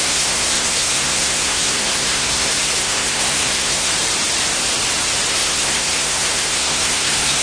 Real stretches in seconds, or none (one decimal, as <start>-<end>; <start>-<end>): 3.9-5.3